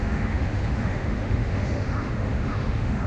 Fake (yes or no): yes